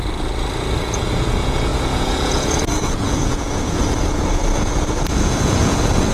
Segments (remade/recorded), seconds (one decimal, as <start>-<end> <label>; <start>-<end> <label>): 0.0-0.8 recorded; 0.8-6.1 remade